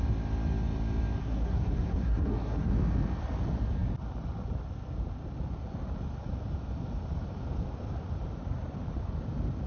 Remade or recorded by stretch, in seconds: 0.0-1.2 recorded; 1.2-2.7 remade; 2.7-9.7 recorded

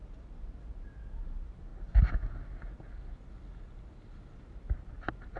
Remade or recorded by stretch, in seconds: 0.0-5.4 recorded

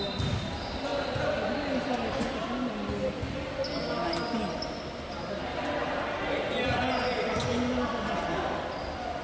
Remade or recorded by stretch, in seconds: 0.0-5.8 recorded; 5.8-6.8 remade; 6.8-9.2 recorded

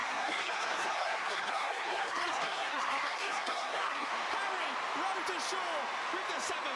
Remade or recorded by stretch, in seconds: 0.0-4.1 remade; 4.1-6.8 recorded

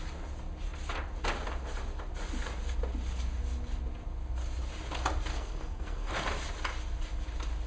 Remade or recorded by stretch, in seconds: 0.0-5.3 recorded; 5.3-6.1 remade; 6.1-7.7 recorded